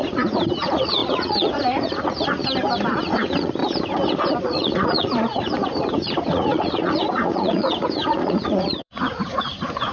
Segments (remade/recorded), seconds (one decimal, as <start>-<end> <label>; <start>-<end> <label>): 0.0-2.4 remade; 2.4-3.0 recorded; 3.0-3.6 remade; 3.6-4.4 recorded; 4.4-9.9 remade